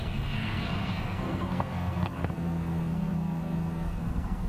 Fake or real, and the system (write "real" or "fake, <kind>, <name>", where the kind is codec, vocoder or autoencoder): fake, codec, SNAC